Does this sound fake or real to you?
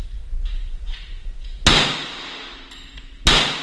real